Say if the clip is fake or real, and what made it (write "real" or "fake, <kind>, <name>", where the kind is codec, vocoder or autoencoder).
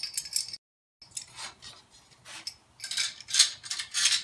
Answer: real